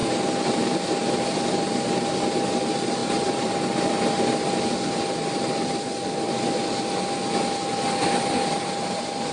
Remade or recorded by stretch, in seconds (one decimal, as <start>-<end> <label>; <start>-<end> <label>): 0.0-9.3 recorded